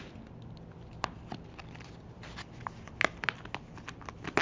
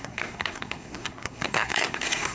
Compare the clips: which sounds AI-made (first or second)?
second